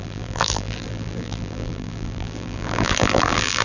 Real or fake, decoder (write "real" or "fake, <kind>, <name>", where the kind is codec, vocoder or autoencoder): fake, vocoder, BigVGAN v2